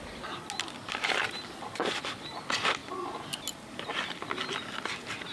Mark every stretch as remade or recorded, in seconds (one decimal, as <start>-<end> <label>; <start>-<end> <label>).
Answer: 0.0-5.3 recorded